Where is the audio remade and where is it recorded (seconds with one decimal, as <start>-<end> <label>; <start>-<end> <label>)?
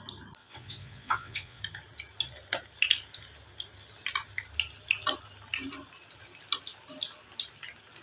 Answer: 0.0-0.4 recorded; 0.4-1.6 remade; 1.6-8.0 recorded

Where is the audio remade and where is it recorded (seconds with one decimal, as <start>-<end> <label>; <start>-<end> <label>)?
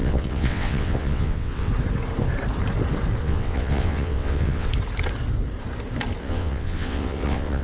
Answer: 0.0-1.7 remade; 1.7-3.2 recorded; 3.2-4.7 remade; 4.7-6.2 recorded; 6.2-7.6 remade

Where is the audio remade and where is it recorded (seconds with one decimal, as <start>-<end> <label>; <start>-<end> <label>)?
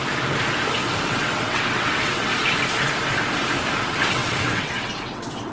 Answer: 0.0-1.0 recorded; 1.0-2.3 remade; 2.3-3.8 recorded; 3.8-5.5 remade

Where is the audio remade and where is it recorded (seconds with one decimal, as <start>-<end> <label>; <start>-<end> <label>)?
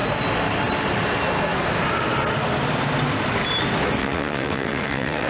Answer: 0.0-4.0 recorded; 4.0-5.3 remade